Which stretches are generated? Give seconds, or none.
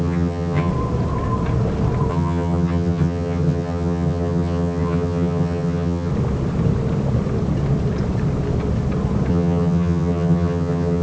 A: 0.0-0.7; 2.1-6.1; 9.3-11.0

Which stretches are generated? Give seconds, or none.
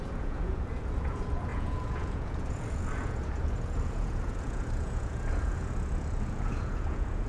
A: 0.0-7.3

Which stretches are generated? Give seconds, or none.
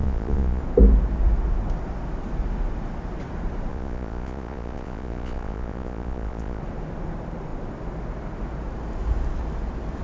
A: 0.0-0.6; 3.7-6.6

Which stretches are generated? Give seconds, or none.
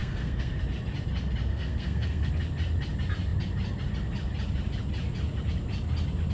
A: 0.0-0.6; 1.5-2.3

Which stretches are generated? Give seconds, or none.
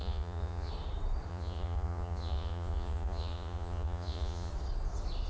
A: 0.0-0.7; 1.3-4.5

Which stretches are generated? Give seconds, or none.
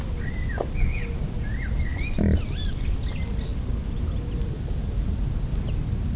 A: none